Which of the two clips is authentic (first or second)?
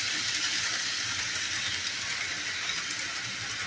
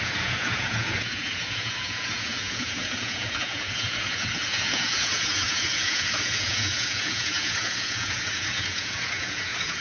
first